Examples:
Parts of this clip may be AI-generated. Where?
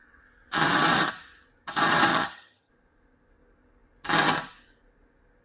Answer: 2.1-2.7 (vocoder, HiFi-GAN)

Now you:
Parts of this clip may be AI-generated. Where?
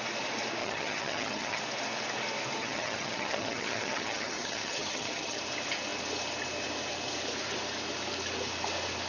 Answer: 0.6-1.6 (vocoder, HiFi-GAN); 2.6-5.4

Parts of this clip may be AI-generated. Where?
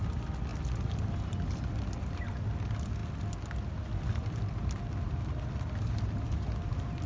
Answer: none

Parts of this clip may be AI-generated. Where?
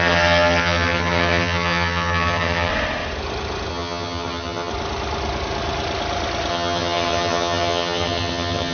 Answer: 0.0-2.7 (vocoder, HiFi-GAN); 3.7-4.7; 6.5-8.7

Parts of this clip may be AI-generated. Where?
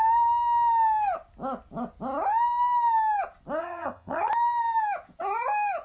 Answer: 3.6-4.3 (vocoder, HiFi-GAN)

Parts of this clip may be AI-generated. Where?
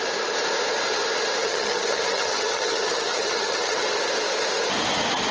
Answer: 1.4-3.8 (vocoder, HiFi-GAN)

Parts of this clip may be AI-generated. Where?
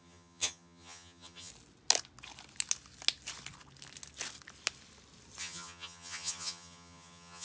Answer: 0.0-1.5 (vocoder, HiFi-GAN); 5.4-7.4